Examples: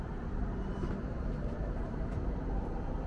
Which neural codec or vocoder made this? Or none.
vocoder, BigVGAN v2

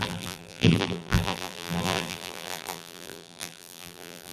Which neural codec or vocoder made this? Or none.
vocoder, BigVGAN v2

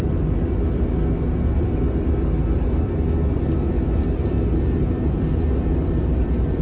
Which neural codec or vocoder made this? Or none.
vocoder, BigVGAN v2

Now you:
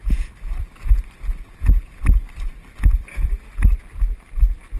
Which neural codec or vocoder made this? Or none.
vocoder, BigVGAN v2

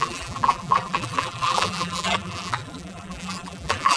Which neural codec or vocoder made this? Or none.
vocoder, BigVGAN v2